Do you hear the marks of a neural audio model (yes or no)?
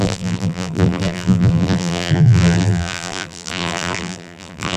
yes